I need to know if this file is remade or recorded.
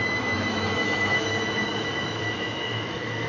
remade